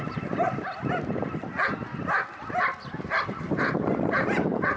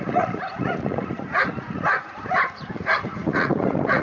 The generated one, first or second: second